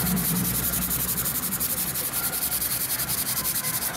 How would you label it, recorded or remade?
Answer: remade